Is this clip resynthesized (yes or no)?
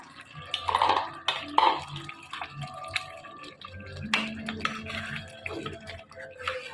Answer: no